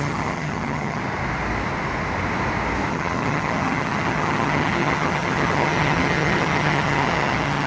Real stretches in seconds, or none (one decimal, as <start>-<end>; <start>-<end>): 1.0-2.9